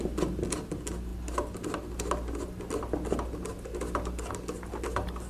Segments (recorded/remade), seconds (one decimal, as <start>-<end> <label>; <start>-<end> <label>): 0.0-5.3 recorded